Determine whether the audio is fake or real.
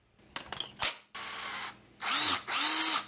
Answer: real